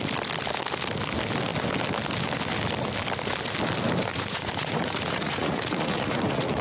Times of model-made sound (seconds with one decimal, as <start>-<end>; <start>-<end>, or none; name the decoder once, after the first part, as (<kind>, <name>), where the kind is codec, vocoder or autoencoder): 4.1-6.6 (vocoder, Vocos)